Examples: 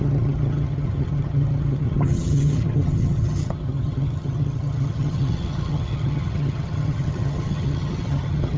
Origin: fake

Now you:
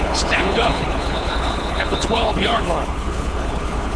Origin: fake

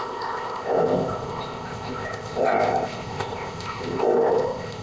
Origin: fake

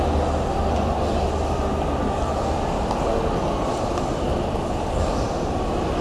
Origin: real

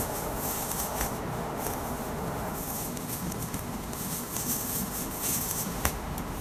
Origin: fake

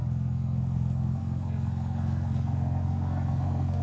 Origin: fake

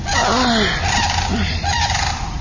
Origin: real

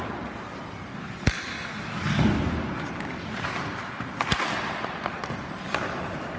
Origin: real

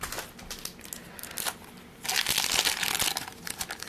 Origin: real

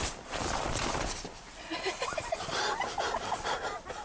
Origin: fake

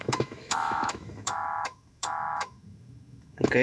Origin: fake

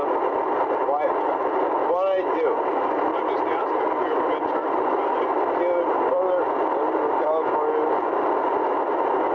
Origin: real